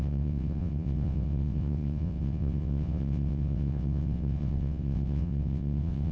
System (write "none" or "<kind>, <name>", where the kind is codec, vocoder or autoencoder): vocoder, WaveNeXt